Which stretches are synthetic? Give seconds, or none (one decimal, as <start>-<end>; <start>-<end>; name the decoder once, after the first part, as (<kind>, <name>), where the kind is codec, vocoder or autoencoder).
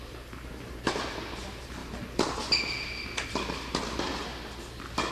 none